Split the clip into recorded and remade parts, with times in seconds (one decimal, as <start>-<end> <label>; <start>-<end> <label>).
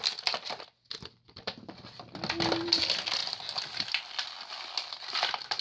0.0-3.2 recorded; 3.2-5.1 remade; 5.1-5.6 recorded